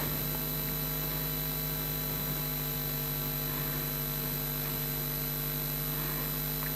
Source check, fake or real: real